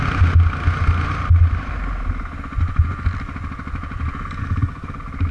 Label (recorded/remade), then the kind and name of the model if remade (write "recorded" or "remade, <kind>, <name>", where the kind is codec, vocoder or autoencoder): recorded